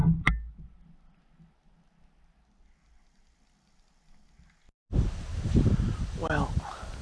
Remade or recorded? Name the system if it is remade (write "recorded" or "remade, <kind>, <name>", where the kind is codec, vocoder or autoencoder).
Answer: recorded